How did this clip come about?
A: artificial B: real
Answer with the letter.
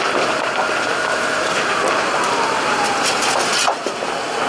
B